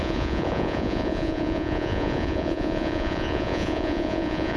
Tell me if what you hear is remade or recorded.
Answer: remade